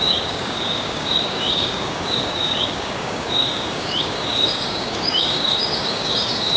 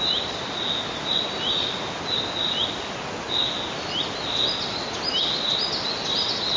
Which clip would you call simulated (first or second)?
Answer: first